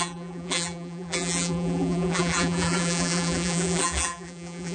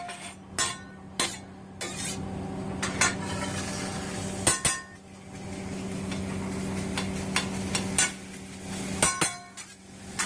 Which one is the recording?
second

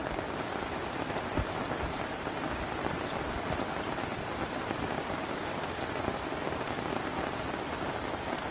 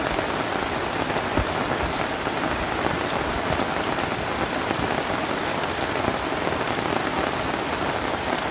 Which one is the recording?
second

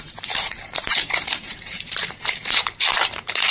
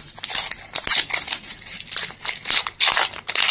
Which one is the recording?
second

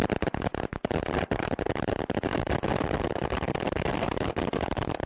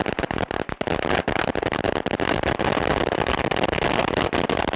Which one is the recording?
second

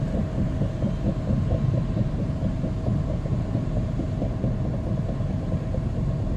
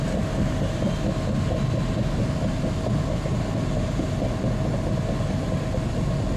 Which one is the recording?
second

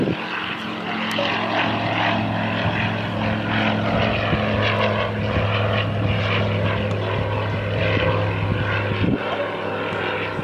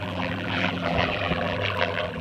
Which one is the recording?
first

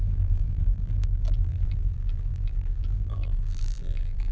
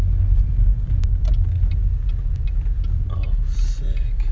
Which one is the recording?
second